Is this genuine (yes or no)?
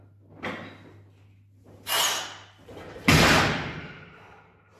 yes